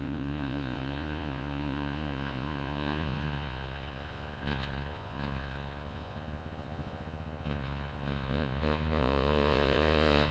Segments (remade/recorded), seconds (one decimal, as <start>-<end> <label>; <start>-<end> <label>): 0.0-10.3 remade